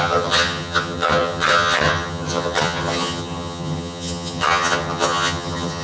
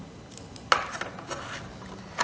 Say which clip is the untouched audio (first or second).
second